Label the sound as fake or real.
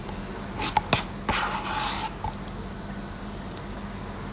real